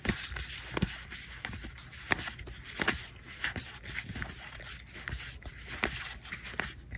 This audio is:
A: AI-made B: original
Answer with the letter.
B